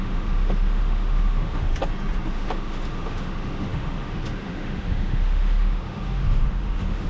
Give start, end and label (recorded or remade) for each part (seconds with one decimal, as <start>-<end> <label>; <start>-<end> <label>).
0.0-1.7 remade; 1.7-2.3 recorded; 2.3-7.1 remade